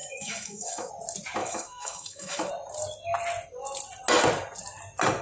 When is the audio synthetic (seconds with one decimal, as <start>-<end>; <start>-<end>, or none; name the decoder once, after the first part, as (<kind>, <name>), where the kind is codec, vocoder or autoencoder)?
0.0-0.9 (autoencoder, DAC-VAE); 1.4-2.5